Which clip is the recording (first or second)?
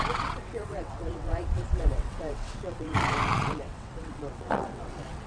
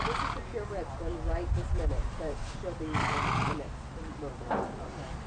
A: second